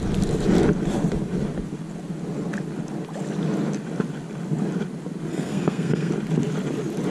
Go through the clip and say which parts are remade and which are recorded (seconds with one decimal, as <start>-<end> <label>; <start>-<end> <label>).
0.0-5.3 recorded; 5.3-6.1 remade; 6.1-7.1 recorded

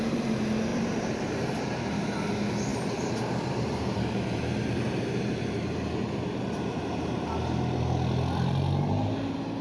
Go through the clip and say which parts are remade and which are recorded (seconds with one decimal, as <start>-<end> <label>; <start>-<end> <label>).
0.0-0.7 recorded; 0.7-1.6 remade; 1.6-2.7 recorded; 2.7-6.8 remade; 6.8-9.6 recorded

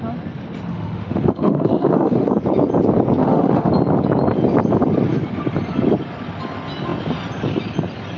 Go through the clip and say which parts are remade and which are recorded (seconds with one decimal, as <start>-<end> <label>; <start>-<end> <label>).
0.0-0.7 recorded; 0.7-2.3 remade; 2.3-3.2 recorded; 3.2-3.7 remade; 3.7-8.2 recorded

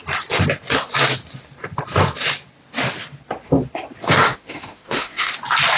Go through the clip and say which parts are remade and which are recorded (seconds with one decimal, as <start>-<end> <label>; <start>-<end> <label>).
0.0-4.0 recorded; 4.0-5.3 remade; 5.3-5.8 recorded

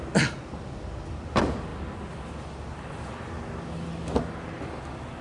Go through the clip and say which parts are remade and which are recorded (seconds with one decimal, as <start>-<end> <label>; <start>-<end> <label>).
0.0-5.2 recorded

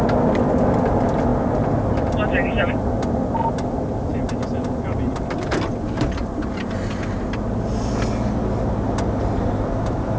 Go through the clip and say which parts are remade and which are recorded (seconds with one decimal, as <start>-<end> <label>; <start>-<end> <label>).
0.0-10.2 recorded